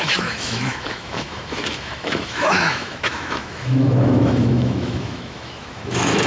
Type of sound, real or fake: fake